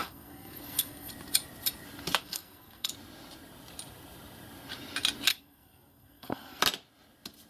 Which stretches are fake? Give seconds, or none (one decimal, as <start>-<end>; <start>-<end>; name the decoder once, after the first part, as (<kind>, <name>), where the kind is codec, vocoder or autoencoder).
0.0-1.1 (codec, SNAC); 2.2-2.9; 5.3-6.6

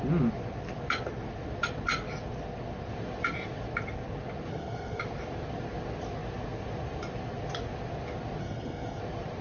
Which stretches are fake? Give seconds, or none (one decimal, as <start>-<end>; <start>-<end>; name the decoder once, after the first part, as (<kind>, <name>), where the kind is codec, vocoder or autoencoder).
4.5-5.0 (codec, SNAC); 8.4-9.0

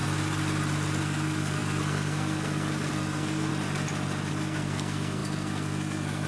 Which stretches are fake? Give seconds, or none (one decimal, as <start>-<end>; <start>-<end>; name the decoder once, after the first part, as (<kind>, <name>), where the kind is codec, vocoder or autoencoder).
1.0-3.5 (codec, SNAC); 4.3-6.3

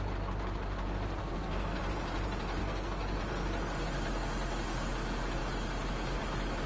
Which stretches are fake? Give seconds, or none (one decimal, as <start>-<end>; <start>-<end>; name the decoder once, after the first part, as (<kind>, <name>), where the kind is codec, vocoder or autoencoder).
1.2-1.8 (codec, SNAC); 2.6-3.2

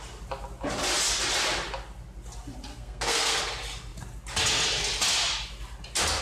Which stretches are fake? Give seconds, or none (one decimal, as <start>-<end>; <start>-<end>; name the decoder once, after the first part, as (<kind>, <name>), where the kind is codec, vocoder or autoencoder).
2.7-3.4 (codec, SNAC)